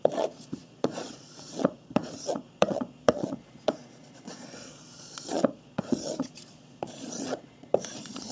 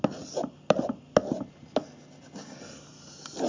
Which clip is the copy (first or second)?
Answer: first